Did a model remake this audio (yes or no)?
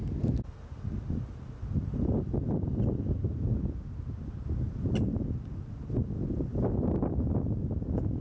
no